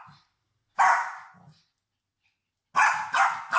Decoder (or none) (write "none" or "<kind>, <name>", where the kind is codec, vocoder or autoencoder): none